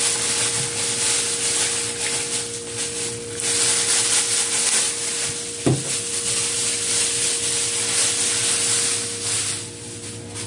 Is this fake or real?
real